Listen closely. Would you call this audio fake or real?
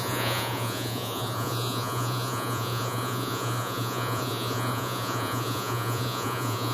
fake